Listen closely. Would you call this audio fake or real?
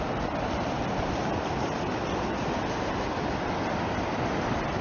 real